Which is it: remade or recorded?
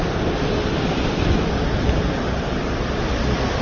remade